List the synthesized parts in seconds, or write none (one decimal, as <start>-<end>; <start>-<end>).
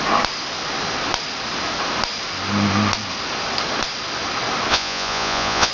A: 4.7-5.7